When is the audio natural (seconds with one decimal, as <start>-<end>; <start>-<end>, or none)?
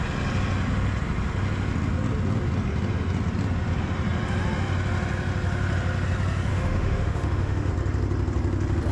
0.0-6.5; 7.7-8.9